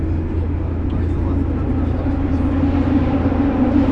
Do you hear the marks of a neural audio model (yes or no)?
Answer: no